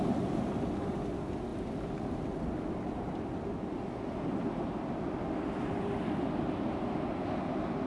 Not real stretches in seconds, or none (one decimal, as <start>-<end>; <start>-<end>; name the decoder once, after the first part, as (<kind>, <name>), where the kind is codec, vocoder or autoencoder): none